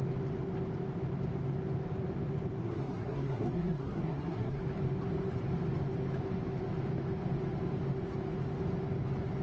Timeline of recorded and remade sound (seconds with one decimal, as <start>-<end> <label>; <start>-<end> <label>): 0.0-2.6 recorded; 2.6-4.6 remade; 4.6-9.4 recorded